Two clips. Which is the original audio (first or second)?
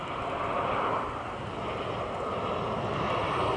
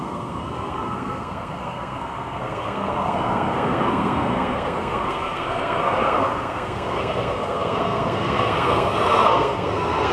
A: first